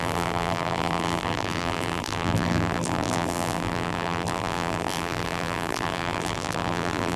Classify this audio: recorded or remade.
remade